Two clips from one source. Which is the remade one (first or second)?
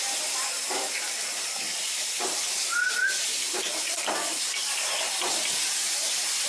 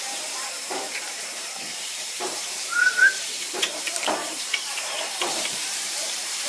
second